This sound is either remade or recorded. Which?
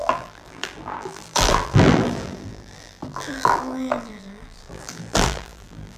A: remade